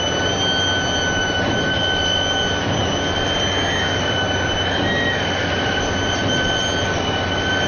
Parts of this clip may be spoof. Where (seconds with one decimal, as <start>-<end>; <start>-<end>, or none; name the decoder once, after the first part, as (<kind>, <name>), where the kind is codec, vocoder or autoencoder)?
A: 1.2-1.8 (vocoder, BigVGAN v2)